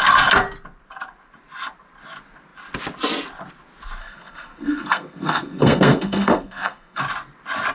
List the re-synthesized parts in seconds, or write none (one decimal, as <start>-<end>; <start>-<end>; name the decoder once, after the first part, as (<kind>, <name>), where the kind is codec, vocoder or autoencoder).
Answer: 4.0-7.0 (codec, SNAC)